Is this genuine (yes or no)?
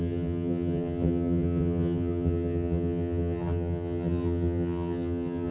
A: no